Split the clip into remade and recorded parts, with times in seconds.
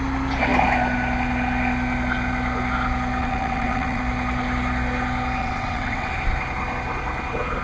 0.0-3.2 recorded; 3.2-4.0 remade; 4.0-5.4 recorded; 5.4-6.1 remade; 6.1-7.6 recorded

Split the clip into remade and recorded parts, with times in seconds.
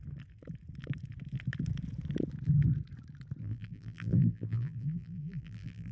0.0-3.4 recorded; 3.4-5.9 remade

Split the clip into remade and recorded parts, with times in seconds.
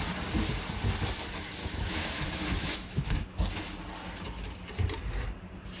0.0-1.6 recorded; 1.6-3.6 remade; 3.6-5.8 recorded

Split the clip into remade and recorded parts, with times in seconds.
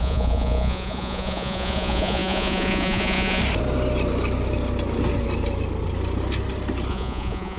0.0-3.4 remade; 3.4-6.9 recorded; 6.9-7.6 remade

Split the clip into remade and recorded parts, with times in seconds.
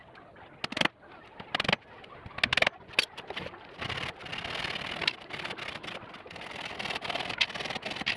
0.0-8.2 recorded